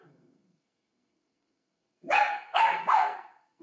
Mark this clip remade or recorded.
remade